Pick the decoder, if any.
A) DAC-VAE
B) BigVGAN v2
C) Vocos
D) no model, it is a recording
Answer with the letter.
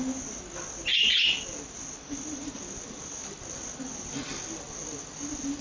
D